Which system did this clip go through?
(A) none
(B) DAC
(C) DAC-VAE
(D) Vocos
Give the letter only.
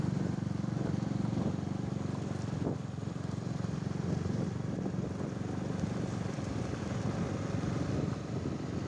A